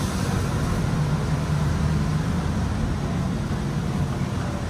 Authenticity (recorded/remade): recorded